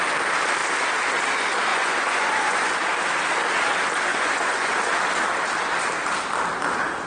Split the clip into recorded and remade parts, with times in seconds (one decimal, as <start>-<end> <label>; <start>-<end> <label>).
0.0-1.7 recorded; 1.7-2.7 remade; 2.7-4.1 recorded; 4.1-4.8 remade; 4.8-7.1 recorded